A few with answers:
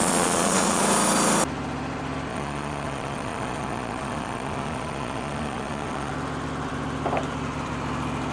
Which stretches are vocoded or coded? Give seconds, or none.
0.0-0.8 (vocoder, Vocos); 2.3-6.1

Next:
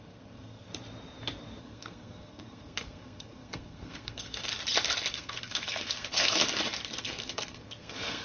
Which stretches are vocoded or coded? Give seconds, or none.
0.0-0.7 (codec, SNAC); 1.6-4.5; 5.1-6.4; 7.0-8.2

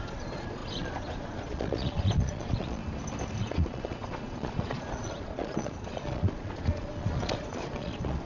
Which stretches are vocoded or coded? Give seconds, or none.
0.0-2.8 (vocoder, Vocos); 3.4-8.3

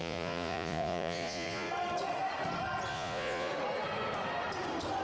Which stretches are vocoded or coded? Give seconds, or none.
0.0-1.7 (vocoder, Vocos); 2.9-3.5

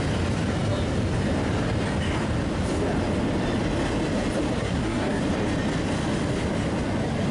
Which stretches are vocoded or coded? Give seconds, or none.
4.6-5.2 (codec, SNAC)